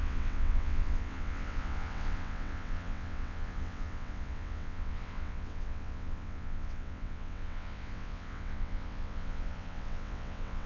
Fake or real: fake